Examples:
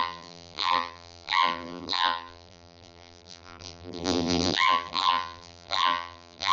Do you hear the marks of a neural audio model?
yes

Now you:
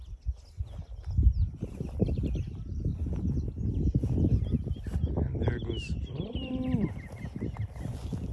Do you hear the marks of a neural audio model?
no